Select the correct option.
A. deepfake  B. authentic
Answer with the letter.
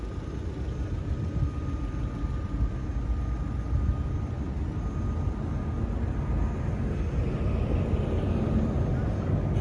B